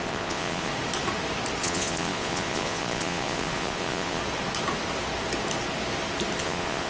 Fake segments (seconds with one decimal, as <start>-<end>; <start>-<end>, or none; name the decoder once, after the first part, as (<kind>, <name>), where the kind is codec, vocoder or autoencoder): 0.0-0.7 (vocoder, Vocos); 1.6-4.2; 6.4-6.9